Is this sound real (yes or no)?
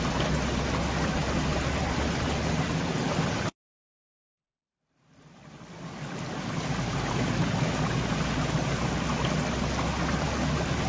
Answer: yes